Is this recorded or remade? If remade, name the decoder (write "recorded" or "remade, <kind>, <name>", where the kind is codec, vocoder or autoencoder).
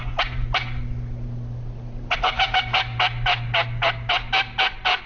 recorded